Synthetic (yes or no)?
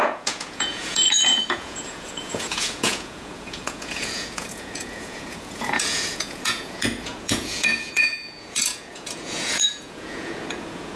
yes